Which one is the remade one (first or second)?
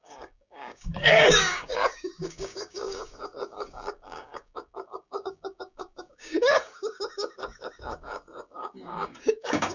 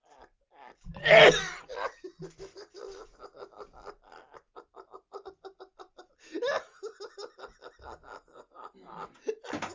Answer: first